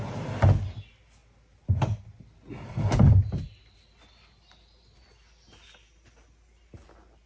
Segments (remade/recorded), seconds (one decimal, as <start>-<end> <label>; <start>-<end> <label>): 0.0-7.3 recorded